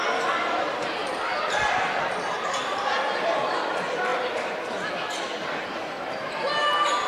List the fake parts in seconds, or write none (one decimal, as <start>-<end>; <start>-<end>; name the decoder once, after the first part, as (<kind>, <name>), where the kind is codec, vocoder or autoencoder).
1.0-3.1 (vocoder, BigVGAN v2)